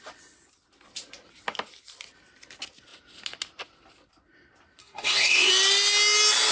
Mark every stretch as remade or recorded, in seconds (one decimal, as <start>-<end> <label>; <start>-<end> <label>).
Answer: 0.0-4.8 recorded; 4.8-5.5 remade; 5.5-6.5 recorded